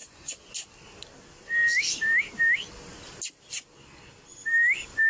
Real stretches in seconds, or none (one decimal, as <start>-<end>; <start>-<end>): 0.5-5.1